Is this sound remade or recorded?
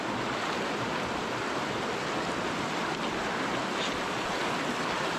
recorded